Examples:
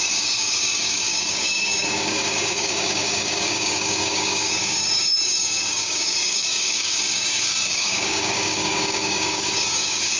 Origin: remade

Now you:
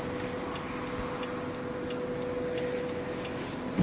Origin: recorded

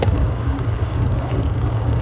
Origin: remade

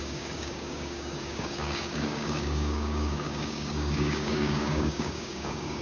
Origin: remade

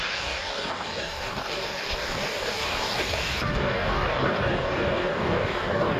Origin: remade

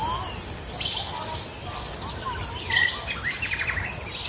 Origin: recorded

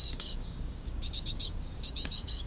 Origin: remade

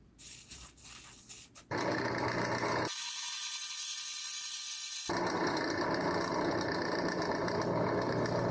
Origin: recorded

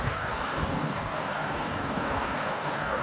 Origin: remade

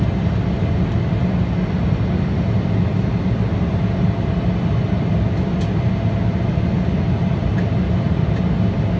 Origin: recorded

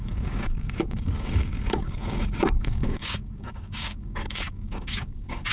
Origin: remade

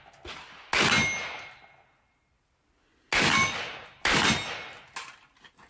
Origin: recorded